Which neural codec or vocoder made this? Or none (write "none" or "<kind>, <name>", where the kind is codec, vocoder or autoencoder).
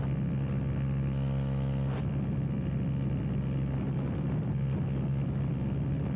none